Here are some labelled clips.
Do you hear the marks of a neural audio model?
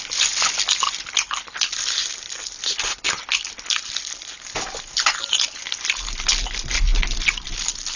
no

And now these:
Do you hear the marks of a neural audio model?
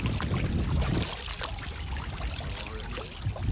no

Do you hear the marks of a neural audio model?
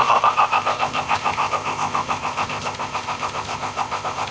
yes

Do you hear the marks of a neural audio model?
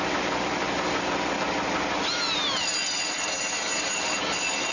no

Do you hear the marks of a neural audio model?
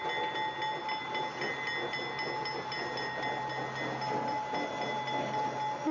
no